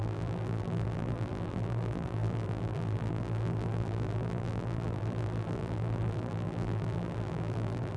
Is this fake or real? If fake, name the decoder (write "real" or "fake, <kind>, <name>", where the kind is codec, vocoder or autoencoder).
fake, vocoder, BigVGAN v2